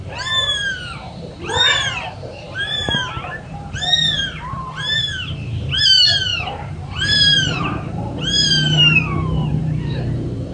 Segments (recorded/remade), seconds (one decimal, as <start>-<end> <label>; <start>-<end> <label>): 0.0-2.6 remade; 2.6-3.3 recorded; 3.3-10.5 remade